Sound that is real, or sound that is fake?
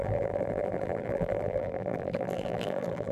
fake